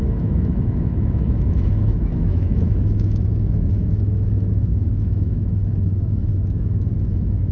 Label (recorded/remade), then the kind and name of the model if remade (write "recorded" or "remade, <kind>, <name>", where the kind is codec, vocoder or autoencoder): remade, autoencoder, DAC-VAE